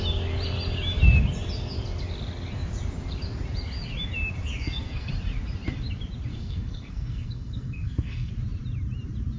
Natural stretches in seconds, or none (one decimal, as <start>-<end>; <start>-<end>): 0.0-4.6; 5.1-6.3; 8.3-9.4